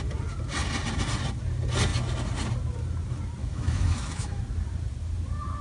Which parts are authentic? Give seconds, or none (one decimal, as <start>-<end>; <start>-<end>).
0.0-3.4; 4.4-5.6